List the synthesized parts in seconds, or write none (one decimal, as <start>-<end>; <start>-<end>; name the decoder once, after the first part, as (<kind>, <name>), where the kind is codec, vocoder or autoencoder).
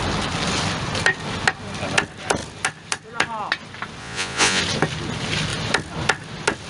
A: 4.0-4.6 (vocoder, Vocos)